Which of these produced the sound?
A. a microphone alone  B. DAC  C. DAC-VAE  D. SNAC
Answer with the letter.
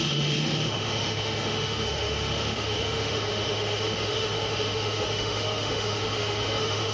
C